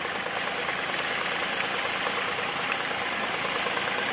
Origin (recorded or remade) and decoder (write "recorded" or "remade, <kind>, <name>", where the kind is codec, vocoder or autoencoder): recorded